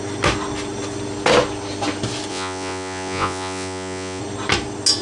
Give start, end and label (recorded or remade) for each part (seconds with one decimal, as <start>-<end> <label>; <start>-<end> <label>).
0.0-2.3 recorded; 2.3-4.2 remade; 4.2-5.0 recorded